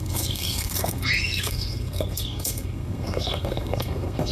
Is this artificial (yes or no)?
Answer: yes